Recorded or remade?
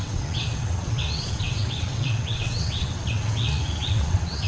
remade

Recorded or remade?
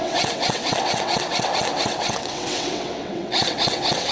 remade